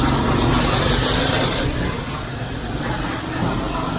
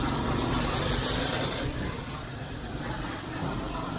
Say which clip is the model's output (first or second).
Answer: second